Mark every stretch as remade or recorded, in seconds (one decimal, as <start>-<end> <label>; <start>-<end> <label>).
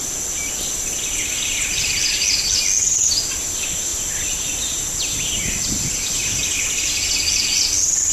0.0-8.1 recorded